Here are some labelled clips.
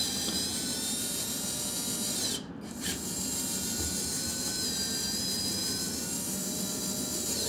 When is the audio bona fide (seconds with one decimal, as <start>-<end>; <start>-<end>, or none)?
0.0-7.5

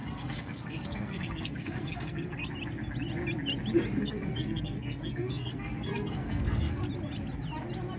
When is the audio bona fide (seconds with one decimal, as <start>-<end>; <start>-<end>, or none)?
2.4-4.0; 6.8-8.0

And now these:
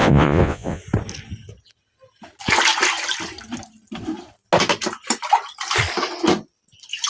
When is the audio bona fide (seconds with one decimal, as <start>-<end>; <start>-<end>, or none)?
0.8-7.1